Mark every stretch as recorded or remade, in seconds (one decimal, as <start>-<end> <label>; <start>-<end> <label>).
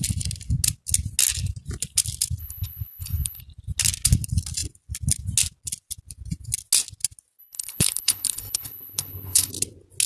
0.0-2.4 recorded; 2.4-3.4 remade; 3.4-7.4 recorded; 7.4-9.5 remade; 9.5-10.1 recorded